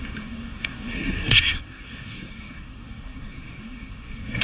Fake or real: fake